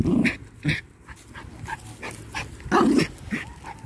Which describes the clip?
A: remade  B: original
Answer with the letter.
B